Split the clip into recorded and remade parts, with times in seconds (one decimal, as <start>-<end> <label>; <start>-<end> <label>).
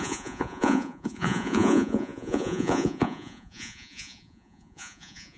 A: 0.0-5.4 remade